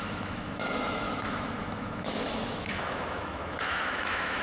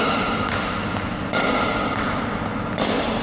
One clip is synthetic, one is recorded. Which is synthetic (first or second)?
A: first